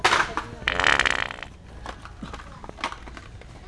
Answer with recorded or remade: recorded